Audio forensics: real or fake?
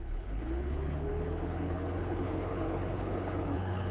fake